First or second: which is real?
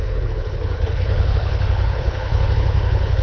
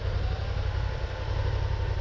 second